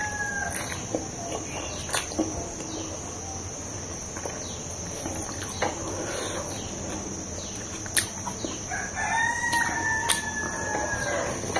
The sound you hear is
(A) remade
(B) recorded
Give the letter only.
B